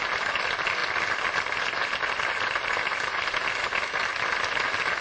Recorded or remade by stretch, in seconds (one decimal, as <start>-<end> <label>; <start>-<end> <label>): 0.0-5.0 recorded